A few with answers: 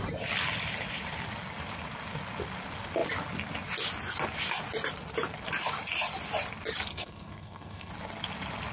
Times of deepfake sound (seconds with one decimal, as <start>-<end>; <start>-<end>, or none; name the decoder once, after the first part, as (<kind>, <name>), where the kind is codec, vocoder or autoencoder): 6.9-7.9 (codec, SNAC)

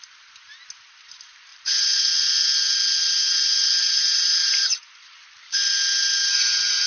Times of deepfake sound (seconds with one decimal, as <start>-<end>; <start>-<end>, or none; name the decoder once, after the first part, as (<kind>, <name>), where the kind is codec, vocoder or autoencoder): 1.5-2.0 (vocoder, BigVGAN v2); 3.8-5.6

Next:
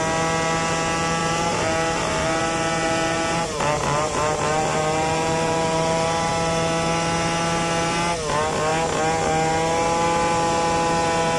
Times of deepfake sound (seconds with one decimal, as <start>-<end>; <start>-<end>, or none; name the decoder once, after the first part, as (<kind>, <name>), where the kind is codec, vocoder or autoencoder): 1.2-6.3 (vocoder, BigVGAN v2)